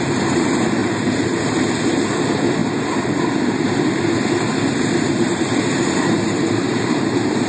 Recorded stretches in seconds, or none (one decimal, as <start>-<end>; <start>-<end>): none

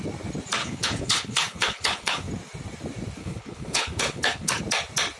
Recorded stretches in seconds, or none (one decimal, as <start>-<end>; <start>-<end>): 0.0-0.6; 2.3-3.2; 4.6-5.2

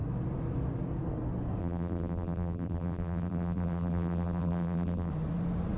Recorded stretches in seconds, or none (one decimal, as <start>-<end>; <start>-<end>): 0.0-1.6; 5.1-5.8

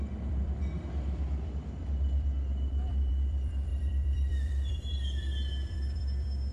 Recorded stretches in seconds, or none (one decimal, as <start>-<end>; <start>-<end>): none

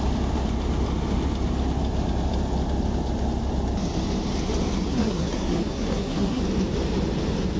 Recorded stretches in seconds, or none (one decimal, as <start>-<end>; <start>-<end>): 0.0-4.9; 6.4-7.6

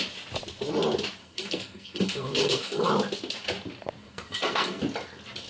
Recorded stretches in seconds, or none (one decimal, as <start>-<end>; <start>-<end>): 0.0-1.2; 2.9-4.0; 4.8-5.5